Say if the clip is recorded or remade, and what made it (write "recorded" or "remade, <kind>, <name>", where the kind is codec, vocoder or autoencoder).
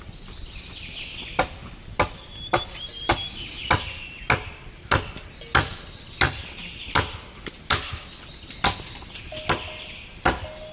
recorded